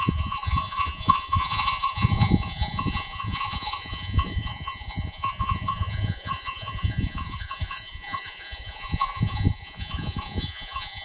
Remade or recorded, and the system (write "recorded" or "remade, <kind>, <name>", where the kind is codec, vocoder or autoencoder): remade, vocoder, Vocos